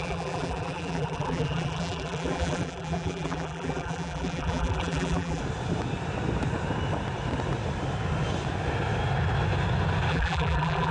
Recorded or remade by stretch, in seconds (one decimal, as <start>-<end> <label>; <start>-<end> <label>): 0.0-5.4 remade; 5.4-10.1 recorded; 10.1-10.9 remade